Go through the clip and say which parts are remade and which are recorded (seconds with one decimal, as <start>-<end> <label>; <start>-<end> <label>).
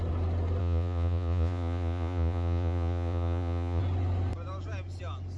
0.0-0.6 recorded; 0.6-3.8 remade; 3.8-5.4 recorded